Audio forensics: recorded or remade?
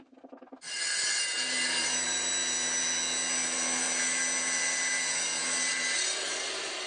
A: recorded